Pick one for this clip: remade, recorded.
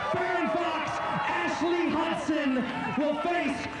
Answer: recorded